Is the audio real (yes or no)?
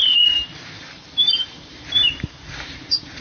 no